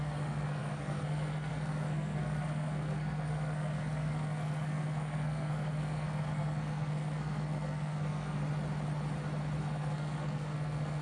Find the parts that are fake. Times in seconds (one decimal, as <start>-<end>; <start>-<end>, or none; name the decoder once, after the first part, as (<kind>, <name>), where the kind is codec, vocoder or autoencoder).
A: 0.0-8.4 (codec, SNAC); 9.6-11.0